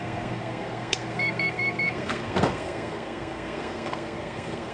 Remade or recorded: remade